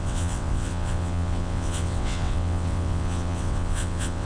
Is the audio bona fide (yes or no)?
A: no